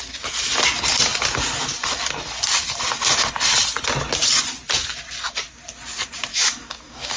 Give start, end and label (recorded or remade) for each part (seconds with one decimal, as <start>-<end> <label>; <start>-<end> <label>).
0.0-6.3 recorded; 6.3-7.2 remade

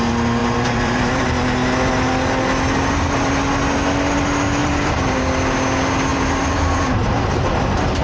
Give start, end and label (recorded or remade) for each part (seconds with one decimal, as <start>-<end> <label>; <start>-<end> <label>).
0.0-0.4 recorded; 0.4-1.1 remade; 1.1-4.6 recorded; 4.6-5.2 remade; 5.2-6.1 recorded; 6.1-8.0 remade

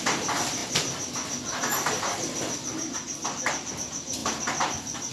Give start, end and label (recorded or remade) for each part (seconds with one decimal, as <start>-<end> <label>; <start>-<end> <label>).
0.0-5.1 recorded

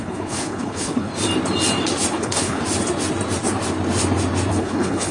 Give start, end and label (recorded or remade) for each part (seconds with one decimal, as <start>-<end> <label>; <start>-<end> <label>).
0.0-1.1 remade; 1.1-2.1 recorded; 2.1-2.6 remade; 2.6-4.5 recorded; 4.5-5.1 remade

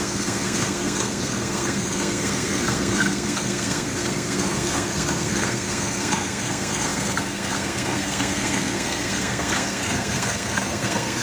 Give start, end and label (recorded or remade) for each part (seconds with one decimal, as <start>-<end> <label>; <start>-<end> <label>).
0.0-11.2 remade

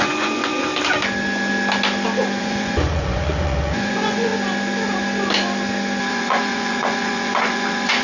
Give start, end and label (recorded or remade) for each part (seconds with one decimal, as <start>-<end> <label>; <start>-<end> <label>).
0.0-0.7 remade; 0.7-2.4 recorded; 2.4-4.3 remade; 4.3-6.1 recorded; 6.1-8.0 remade

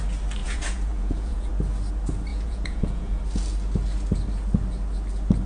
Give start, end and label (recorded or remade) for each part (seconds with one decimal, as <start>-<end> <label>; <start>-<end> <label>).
0.0-0.4 recorded; 0.4-1.5 remade; 1.5-2.3 recorded; 2.3-3.2 remade; 3.2-5.5 recorded

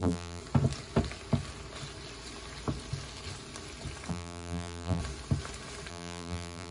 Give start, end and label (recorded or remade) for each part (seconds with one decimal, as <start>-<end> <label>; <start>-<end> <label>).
0.0-0.4 remade; 0.4-4.1 recorded; 4.1-5.0 remade; 5.0-5.9 recorded; 5.9-6.7 remade